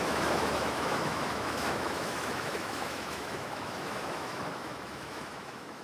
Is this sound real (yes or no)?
no